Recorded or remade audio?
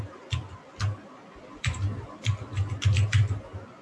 recorded